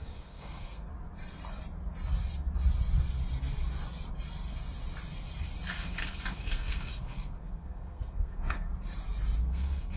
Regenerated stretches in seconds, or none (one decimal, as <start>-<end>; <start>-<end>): 0.0-0.9; 5.7-8.7; 9.4-10.0